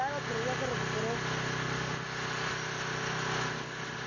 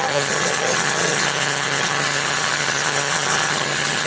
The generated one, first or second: second